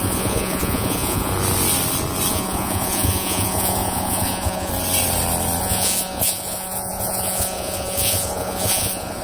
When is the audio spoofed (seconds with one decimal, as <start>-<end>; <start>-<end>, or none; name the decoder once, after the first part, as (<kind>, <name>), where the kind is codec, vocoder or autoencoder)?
0.0-1.3 (vocoder, Vocos); 2.3-4.7; 5.6-9.2